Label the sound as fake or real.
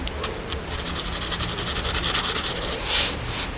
real